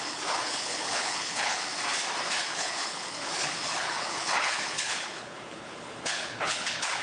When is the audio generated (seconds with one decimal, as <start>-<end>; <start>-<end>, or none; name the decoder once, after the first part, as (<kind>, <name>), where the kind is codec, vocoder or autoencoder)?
0.0-1.7 (codec, HILCodec); 2.4-7.0